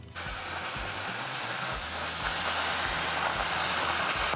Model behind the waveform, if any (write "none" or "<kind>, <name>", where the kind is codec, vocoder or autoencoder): none